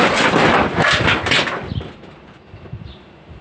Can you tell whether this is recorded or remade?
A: recorded